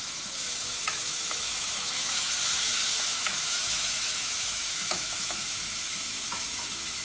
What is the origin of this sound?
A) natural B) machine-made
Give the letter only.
B